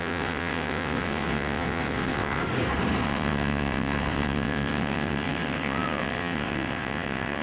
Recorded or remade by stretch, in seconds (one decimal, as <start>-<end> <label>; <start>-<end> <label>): 0.0-2.4 remade; 2.4-3.0 recorded; 3.0-7.4 remade